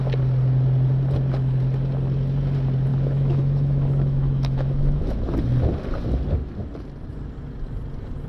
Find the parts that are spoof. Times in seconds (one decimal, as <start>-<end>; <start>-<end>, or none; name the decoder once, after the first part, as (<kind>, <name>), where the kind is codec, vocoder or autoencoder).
2.9-5.2 (autoencoder, DAC-VAE)